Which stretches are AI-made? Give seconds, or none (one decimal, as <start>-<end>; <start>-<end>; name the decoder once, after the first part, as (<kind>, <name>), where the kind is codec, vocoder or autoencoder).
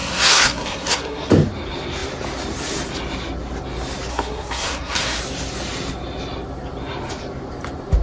0.0-1.3 (codec, SNAC); 4.1-5.2